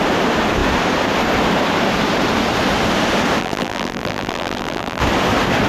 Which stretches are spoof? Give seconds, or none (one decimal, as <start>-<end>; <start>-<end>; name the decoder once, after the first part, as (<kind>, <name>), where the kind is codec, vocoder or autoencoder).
3.4-5.0 (vocoder, BigVGAN v2)